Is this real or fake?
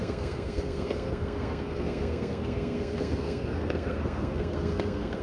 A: fake